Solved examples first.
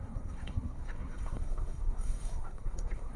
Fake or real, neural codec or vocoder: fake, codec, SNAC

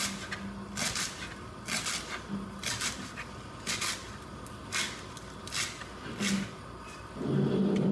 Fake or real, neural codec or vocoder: real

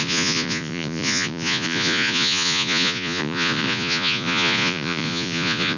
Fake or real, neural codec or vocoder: fake, vocoder, Vocos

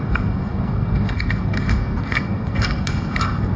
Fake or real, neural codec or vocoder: fake, codec, SNAC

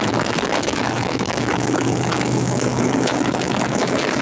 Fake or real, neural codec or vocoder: fake, autoencoder, DAC-VAE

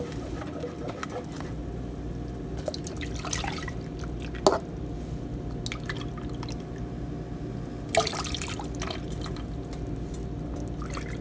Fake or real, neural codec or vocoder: real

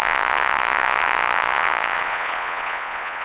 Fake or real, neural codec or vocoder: fake, vocoder, Vocos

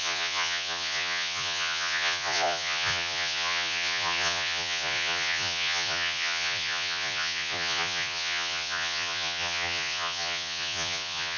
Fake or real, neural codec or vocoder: fake, vocoder, Vocos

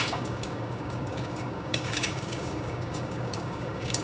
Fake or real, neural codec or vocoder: fake, codec, DAC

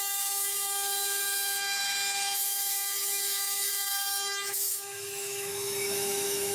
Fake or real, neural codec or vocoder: fake, autoencoder, DAC-VAE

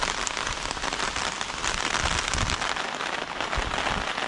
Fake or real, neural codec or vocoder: real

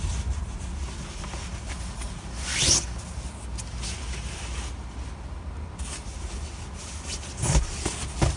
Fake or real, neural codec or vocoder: real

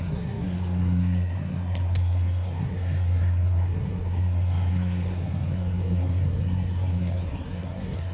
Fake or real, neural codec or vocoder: fake, codec, SNAC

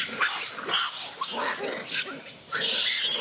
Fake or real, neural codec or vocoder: real